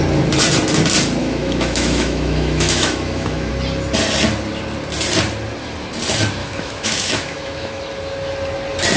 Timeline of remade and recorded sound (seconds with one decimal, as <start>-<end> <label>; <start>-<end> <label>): 0.0-1.2 recorded; 1.2-3.5 remade; 3.5-6.4 recorded; 6.4-7.8 remade; 7.8-9.0 recorded